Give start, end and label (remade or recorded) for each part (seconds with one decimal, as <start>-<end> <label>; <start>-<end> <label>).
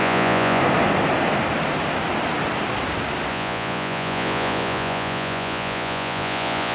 0.0-0.6 remade; 0.6-3.3 recorded; 3.3-6.7 remade